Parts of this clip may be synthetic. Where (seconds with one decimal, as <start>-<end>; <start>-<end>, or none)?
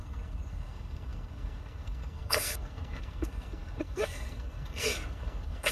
0.0-5.7